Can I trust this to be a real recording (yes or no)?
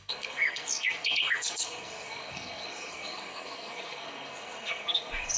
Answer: no